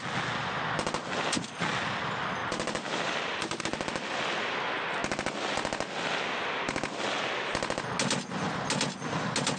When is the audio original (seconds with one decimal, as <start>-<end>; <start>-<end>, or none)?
0.0-2.4; 3.6-9.6